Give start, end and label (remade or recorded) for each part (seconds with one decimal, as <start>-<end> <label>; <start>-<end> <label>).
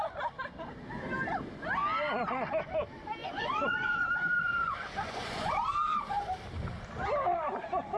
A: 0.0-3.2 recorded; 3.2-5.5 remade; 5.5-8.0 recorded